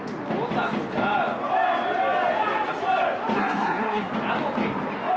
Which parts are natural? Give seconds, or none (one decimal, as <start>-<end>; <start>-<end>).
0.0-3.4; 4.1-5.2